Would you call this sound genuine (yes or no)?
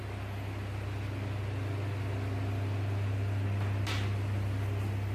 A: yes